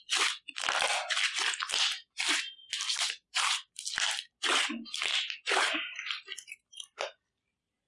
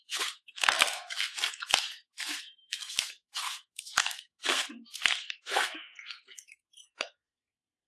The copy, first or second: second